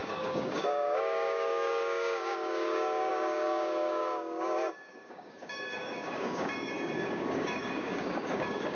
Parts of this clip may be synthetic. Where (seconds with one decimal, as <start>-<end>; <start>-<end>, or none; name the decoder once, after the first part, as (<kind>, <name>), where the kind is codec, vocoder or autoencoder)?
0.0-8.8 (codec, DAC)